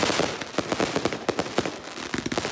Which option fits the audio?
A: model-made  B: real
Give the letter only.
B